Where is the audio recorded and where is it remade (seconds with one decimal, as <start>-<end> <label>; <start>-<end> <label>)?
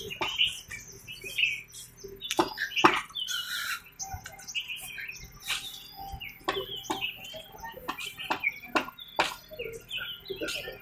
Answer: 0.0-10.8 recorded